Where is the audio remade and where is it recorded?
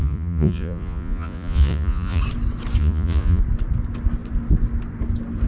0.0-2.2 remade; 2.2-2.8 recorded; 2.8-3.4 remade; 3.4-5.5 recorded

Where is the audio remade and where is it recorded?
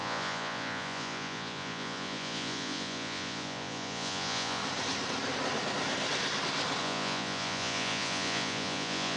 0.0-4.6 remade; 4.6-6.8 recorded; 6.8-9.2 remade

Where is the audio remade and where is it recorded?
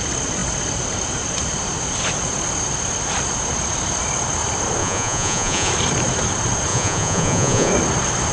0.0-4.8 recorded; 4.8-5.7 remade; 5.7-6.7 recorded; 6.7-7.7 remade; 7.7-8.3 recorded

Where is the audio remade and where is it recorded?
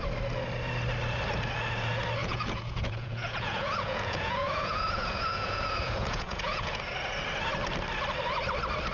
0.0-2.2 recorded; 2.2-6.8 remade; 6.8-8.9 recorded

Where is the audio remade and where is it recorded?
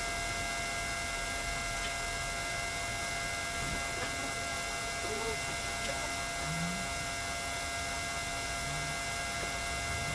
0.0-10.1 recorded